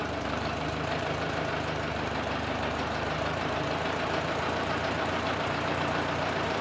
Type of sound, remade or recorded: remade